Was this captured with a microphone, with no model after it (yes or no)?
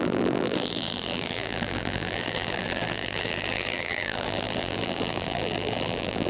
no